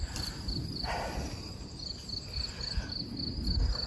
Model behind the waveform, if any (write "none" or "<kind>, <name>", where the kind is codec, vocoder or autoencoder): none